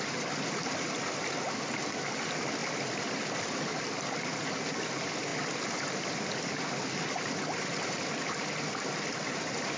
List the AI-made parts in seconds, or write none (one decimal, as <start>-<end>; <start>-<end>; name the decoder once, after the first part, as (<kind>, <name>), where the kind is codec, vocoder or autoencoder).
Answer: none